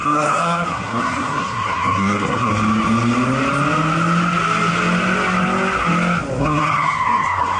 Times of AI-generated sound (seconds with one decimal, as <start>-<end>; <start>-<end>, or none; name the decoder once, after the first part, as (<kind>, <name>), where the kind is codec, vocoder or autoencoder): 0.0-2.5 (codec, SNAC); 6.4-7.6